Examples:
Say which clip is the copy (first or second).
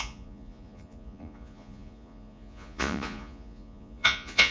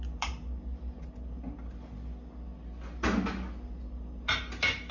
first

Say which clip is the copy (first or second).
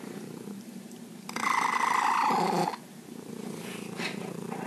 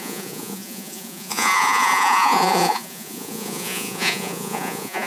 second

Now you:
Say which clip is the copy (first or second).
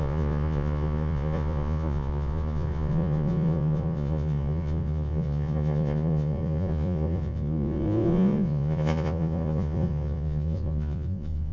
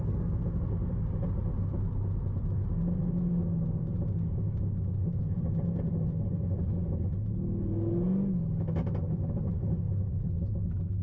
first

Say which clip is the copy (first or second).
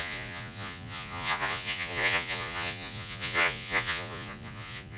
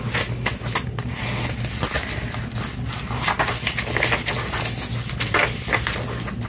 first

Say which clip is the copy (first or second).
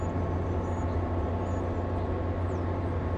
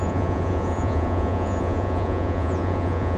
second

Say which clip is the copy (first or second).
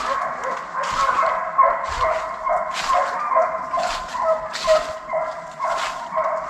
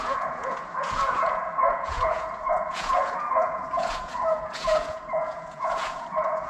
second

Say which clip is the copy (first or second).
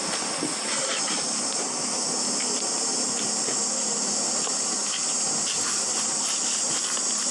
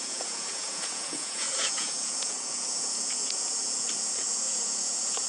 second